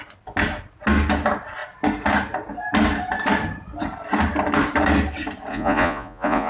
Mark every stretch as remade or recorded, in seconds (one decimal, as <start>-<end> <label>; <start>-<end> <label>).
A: 0.0-5.5 recorded; 5.5-6.5 remade

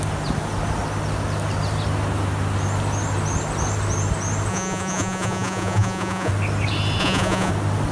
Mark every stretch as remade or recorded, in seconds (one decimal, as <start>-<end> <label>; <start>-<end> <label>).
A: 0.0-4.5 recorded; 4.5-6.3 remade; 6.3-7.0 recorded; 7.0-7.5 remade; 7.5-7.9 recorded

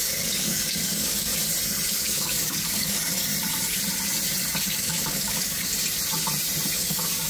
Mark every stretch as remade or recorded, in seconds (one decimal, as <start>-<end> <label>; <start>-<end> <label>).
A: 0.0-1.3 remade; 1.3-1.9 recorded; 1.9-3.3 remade; 3.3-4.6 recorded; 4.6-5.7 remade; 5.7-6.8 recorded; 6.8-7.3 remade

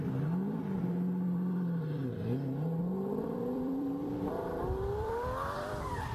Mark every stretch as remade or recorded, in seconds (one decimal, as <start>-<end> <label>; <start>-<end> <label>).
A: 0.0-2.3 remade; 2.3-2.8 recorded; 2.8-6.1 remade

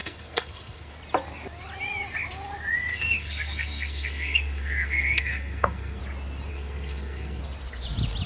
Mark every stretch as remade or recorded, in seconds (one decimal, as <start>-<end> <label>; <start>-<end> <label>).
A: 0.0-0.9 remade; 0.9-2.9 recorded; 2.9-6.0 remade; 6.0-6.5 recorded; 6.5-7.4 remade; 7.4-8.3 recorded

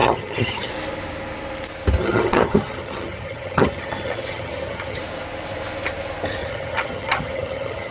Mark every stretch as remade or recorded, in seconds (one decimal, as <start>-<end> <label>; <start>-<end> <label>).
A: 0.0-0.7 remade; 0.7-2.0 recorded; 2.0-5.0 remade; 5.0-6.4 recorded; 6.4-7.9 remade

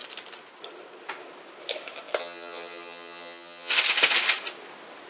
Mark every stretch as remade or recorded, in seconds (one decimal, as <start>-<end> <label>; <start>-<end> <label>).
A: 0.0-2.2 recorded; 2.2-3.7 remade; 3.7-5.1 recorded